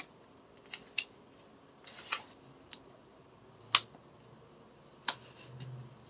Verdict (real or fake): real